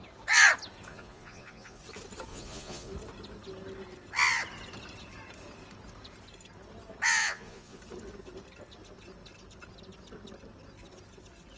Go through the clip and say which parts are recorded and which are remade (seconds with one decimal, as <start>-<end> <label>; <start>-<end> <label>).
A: 0.0-0.9 recorded; 0.9-1.8 remade; 1.8-2.3 recorded; 2.3-2.9 remade; 2.9-7.2 recorded; 7.2-7.8 remade; 7.8-11.6 recorded